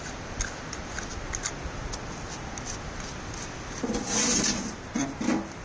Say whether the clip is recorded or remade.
recorded